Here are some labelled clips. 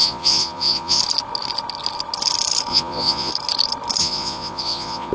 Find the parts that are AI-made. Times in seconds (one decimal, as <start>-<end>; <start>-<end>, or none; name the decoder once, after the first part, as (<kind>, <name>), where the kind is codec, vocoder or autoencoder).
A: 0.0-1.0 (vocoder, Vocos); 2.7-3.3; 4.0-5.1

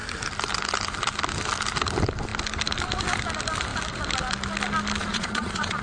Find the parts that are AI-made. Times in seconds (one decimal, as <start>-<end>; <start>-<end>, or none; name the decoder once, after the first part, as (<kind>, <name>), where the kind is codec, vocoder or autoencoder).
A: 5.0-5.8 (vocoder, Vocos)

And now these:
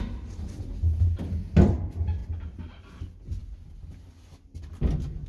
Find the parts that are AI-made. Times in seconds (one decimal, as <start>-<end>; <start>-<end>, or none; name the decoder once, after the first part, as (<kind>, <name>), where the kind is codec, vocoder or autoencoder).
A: none